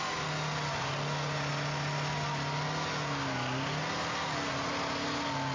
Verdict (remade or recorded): recorded